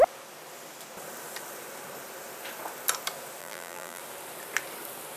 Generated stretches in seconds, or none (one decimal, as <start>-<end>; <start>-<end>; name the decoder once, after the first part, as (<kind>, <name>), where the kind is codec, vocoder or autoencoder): 3.4-4.0 (vocoder, BigVGAN v2)